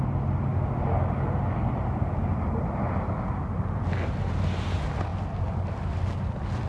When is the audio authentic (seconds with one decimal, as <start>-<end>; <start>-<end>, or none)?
0.0-6.7